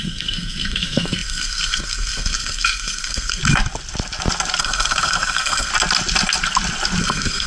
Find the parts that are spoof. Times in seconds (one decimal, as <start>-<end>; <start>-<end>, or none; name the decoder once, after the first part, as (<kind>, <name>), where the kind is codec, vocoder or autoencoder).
0.0-3.4 (codec, SNAC); 4.6-5.7; 7.0-7.5